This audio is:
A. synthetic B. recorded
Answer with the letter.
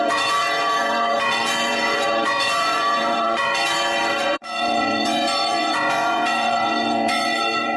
A